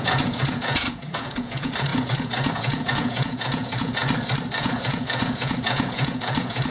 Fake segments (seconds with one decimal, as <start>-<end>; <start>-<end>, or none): 0.0-4.0; 4.6-6.7